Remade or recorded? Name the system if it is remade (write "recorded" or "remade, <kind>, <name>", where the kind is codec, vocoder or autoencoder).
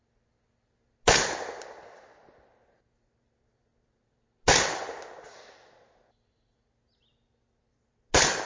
recorded